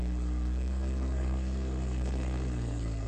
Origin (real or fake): fake